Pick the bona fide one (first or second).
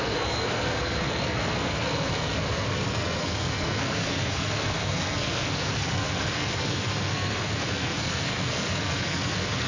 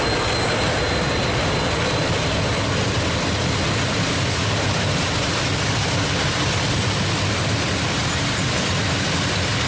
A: second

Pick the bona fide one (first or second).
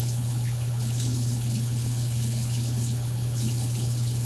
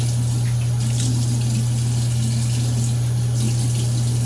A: second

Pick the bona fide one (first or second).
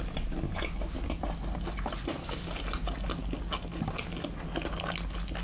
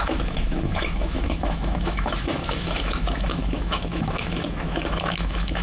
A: first